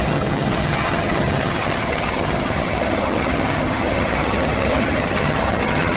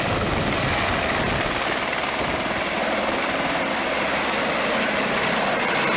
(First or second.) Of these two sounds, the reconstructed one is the first